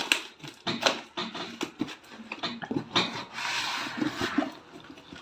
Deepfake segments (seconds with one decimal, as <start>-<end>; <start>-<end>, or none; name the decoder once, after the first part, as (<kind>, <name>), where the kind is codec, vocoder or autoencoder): none